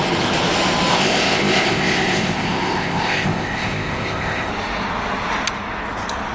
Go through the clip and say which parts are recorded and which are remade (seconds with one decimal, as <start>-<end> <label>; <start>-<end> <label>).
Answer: 0.0-0.9 recorded; 0.9-4.5 remade; 4.5-6.3 recorded